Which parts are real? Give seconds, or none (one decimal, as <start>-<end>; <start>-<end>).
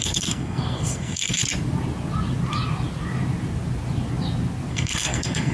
1.4-4.7